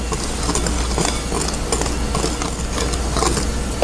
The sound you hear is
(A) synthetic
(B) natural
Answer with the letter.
B